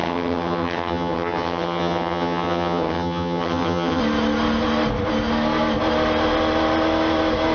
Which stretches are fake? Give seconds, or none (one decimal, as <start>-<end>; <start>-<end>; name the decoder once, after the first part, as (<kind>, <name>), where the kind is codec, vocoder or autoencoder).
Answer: 0.0-4.0 (vocoder, HiFi-GAN)